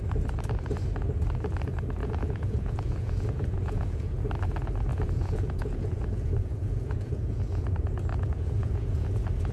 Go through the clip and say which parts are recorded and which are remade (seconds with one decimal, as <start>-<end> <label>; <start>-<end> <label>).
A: 0.0-2.0 recorded; 2.0-4.3 remade; 4.3-4.9 recorded; 4.9-7.7 remade; 7.7-8.1 recorded; 8.1-9.1 remade; 9.1-9.5 recorded